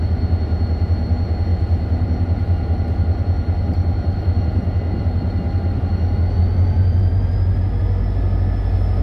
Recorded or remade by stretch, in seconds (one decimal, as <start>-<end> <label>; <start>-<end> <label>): 0.0-9.0 recorded